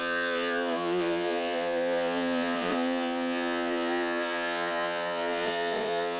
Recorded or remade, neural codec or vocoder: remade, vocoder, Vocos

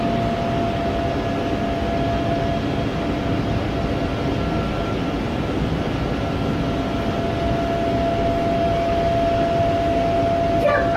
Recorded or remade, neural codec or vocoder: recorded